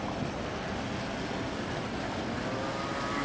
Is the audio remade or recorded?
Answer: recorded